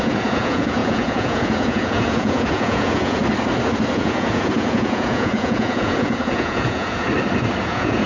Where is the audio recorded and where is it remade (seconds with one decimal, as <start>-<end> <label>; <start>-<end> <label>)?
0.0-3.2 remade; 3.2-3.9 recorded; 3.9-7.1 remade; 7.1-7.6 recorded; 7.6-8.1 remade